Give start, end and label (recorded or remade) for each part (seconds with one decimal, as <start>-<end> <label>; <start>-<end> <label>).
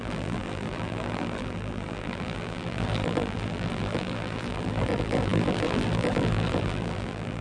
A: 0.0-7.4 remade